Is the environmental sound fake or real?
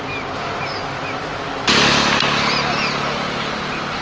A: real